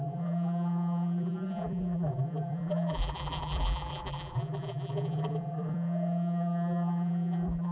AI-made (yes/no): yes